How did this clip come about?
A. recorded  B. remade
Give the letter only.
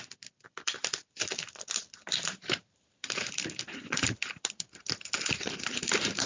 B